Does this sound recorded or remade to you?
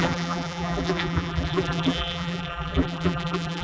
remade